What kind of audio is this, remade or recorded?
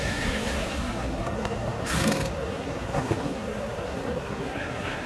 remade